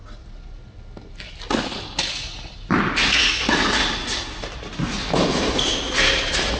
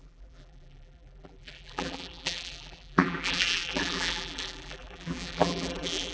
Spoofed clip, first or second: second